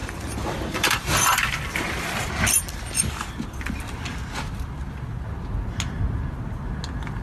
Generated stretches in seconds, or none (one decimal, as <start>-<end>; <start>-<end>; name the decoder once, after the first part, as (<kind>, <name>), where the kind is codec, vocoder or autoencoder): 0.0-2.3 (vocoder, BigVGAN v2)